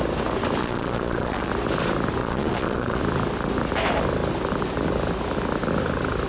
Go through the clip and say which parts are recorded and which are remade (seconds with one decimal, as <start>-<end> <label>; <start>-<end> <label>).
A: 0.0-0.6 recorded; 0.6-1.5 remade; 1.5-2.2 recorded; 2.2-3.0 remade; 3.0-6.3 recorded

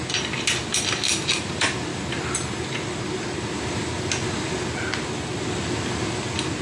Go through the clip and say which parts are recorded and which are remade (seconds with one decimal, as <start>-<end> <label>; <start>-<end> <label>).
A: 0.0-6.6 recorded

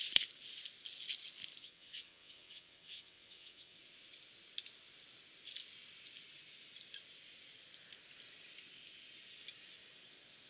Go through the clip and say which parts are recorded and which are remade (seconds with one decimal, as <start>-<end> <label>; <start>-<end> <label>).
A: 0.0-1.6 recorded; 1.6-3.8 remade; 3.8-10.5 recorded

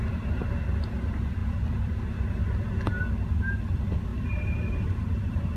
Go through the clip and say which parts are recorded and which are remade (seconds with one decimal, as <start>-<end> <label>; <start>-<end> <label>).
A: 0.0-4.1 recorded; 4.1-5.6 remade

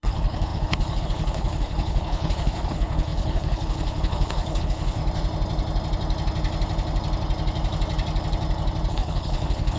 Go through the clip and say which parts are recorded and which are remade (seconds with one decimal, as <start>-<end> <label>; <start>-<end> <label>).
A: 0.0-5.0 remade; 5.0-8.9 recorded; 8.9-9.8 remade